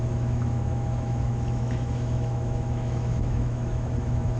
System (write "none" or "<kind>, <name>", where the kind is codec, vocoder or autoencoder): autoencoder, DAC-VAE